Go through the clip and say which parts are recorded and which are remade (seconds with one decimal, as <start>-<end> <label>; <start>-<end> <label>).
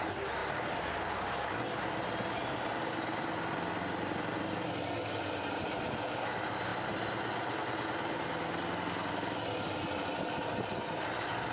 0.0-11.5 recorded